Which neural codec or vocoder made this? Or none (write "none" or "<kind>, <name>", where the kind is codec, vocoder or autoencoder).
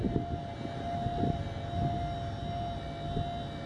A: none